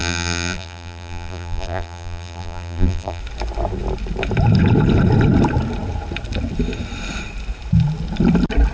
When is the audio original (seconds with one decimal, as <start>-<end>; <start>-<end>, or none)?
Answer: 3.2-8.7